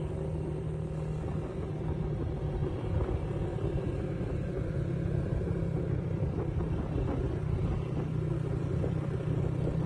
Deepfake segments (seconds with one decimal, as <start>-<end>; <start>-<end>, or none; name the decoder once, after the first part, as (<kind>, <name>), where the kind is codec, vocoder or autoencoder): 2.6-7.7 (vocoder, BigVGAN v2); 8.6-9.9